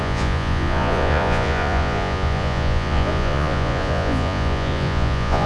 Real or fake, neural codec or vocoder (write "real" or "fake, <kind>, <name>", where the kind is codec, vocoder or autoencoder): fake, vocoder, Vocos